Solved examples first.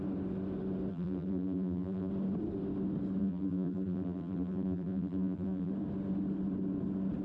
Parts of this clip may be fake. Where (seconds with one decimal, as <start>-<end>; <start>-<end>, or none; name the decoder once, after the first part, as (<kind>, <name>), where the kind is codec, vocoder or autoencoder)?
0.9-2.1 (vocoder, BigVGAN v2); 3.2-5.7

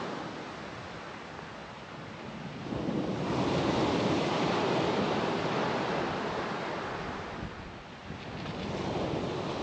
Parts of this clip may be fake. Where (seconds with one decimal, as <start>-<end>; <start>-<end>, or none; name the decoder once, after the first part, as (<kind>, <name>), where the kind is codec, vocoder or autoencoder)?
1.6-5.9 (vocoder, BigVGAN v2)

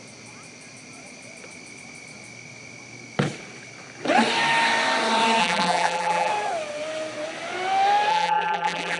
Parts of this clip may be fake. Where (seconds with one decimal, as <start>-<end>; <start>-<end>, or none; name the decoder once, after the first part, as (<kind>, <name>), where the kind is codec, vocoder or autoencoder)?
5.4-6.3 (vocoder, BigVGAN v2); 8.1-9.0

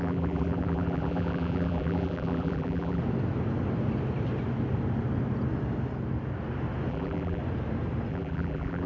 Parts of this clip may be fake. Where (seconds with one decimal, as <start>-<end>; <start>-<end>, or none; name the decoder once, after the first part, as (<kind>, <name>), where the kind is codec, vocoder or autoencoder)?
0.0-3.0 (vocoder, BigVGAN v2); 6.9-7.4; 8.1-8.9